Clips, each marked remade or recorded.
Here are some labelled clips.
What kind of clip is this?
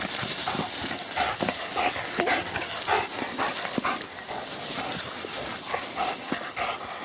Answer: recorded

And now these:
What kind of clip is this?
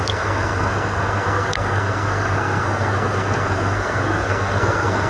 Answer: remade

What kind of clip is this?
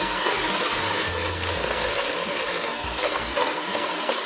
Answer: remade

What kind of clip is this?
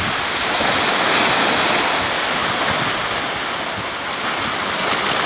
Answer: recorded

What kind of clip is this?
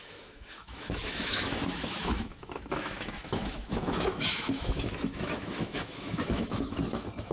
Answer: remade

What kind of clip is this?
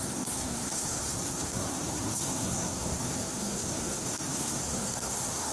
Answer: remade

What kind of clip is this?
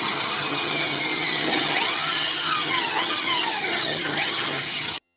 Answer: remade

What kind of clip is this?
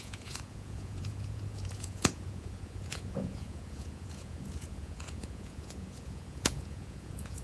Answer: remade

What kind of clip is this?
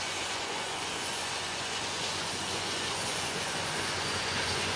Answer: remade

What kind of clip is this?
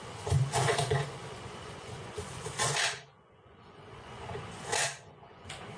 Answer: remade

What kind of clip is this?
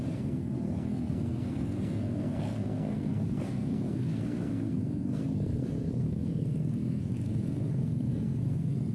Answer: remade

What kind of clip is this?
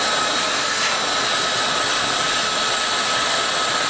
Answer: recorded